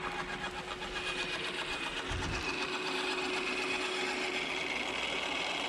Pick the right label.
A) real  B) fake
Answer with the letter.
A